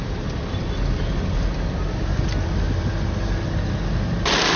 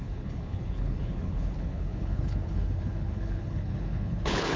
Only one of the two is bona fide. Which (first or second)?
first